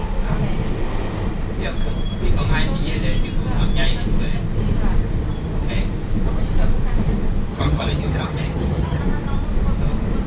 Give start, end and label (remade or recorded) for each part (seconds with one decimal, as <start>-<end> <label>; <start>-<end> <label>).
0.0-7.5 recorded; 7.5-9.0 remade; 9.0-10.3 recorded